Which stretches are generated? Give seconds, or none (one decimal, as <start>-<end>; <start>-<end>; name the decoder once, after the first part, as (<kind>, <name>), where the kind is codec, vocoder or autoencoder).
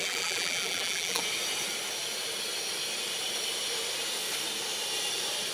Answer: 0.0-1.2 (vocoder, BigVGAN v2)